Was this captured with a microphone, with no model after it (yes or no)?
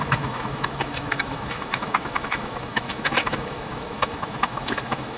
no